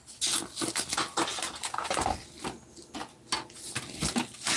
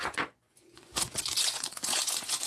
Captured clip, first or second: first